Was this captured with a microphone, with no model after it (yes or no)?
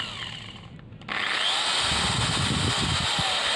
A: yes